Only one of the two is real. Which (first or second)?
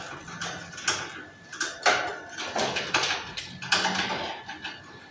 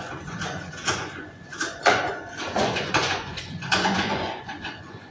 first